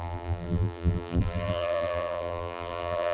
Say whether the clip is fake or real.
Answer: fake